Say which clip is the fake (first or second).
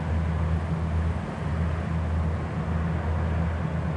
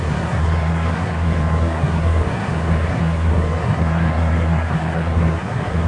second